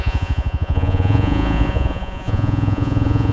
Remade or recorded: remade